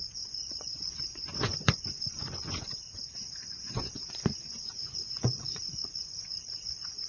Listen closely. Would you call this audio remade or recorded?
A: remade